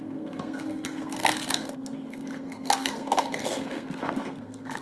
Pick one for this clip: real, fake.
fake